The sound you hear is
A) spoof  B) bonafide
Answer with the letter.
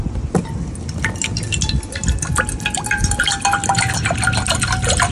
B